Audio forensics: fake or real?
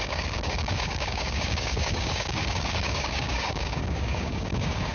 fake